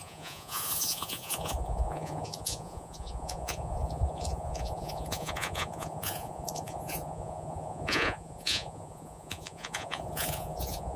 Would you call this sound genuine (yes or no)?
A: no